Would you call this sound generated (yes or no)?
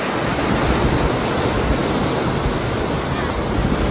no